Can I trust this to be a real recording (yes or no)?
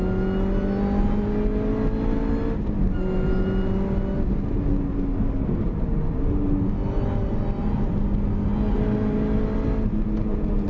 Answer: yes